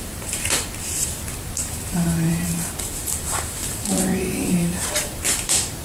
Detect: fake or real fake